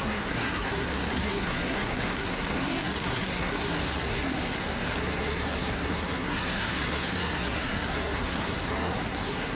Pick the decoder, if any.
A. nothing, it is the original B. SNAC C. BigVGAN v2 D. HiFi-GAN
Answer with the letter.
B